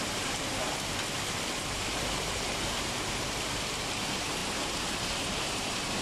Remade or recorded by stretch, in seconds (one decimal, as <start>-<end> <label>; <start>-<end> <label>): 0.0-0.7 remade; 0.7-1.6 recorded; 1.6-6.0 remade